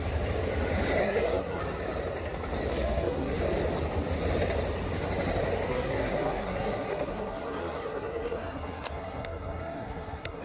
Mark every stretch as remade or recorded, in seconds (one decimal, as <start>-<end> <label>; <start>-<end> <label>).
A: 0.0-1.0 recorded; 1.0-1.6 remade; 1.6-2.7 recorded; 2.7-3.4 remade; 3.4-5.7 recorded; 5.7-10.4 remade